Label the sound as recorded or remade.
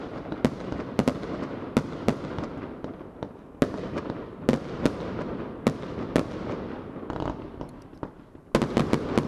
recorded